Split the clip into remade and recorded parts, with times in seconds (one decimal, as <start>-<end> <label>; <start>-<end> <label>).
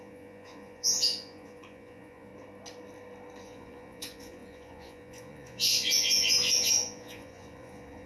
0.0-2.3 remade; 2.3-3.4 recorded; 3.4-8.1 remade